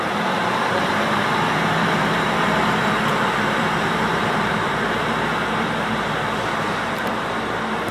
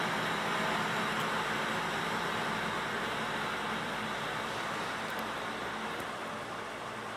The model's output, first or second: first